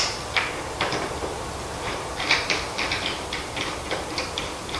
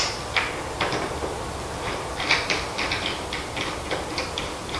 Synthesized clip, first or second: first